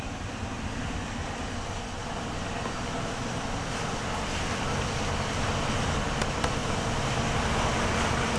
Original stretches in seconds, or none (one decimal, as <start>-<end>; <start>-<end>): 0.0-8.4

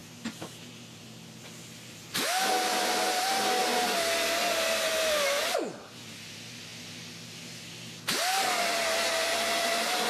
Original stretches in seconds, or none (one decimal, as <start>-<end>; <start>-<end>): 0.0-10.1

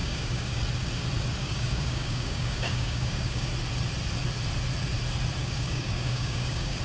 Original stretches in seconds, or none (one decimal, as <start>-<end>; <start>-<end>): 0.6-1.4; 3.5-5.4

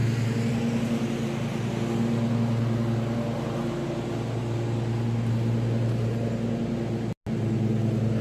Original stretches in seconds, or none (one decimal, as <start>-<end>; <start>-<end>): 0.0-8.2

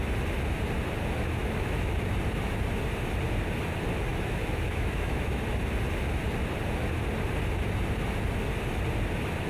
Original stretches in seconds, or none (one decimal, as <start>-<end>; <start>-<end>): 0.0-1.4; 2.1-4.1; 5.4-9.5

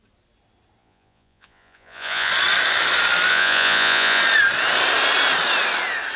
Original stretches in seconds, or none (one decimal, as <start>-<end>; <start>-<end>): 0.0-0.8; 2.3-3.3; 4.2-6.2